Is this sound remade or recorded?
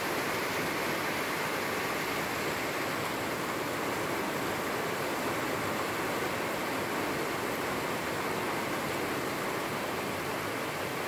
recorded